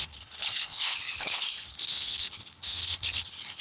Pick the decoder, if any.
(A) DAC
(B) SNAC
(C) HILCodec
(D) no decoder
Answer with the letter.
C